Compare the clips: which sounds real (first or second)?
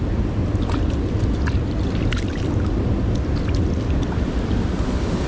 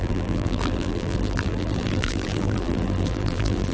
first